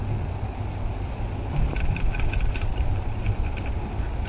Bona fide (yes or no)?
yes